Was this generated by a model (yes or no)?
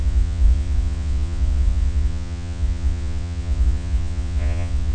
yes